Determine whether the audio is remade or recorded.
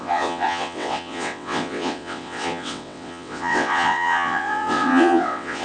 remade